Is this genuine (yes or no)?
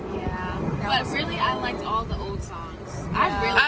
yes